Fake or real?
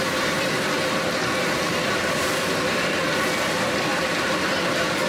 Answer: fake